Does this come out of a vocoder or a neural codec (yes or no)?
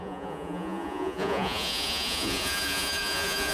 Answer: yes